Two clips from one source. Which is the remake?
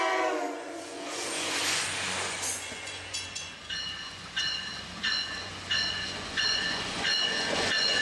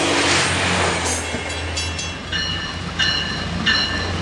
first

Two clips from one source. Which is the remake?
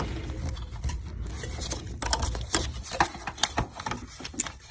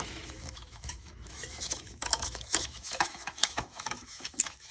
second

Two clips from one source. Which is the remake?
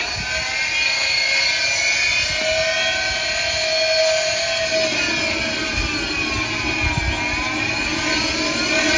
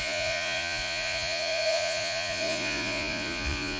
second